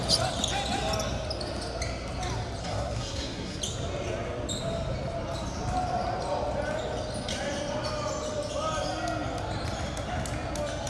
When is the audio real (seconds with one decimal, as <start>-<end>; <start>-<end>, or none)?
0.0-2.6; 3.6-10.9